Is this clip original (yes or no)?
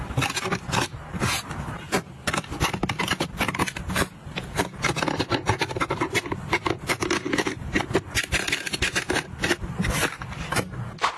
yes